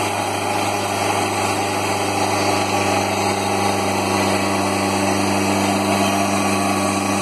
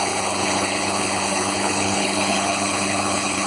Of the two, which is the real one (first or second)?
first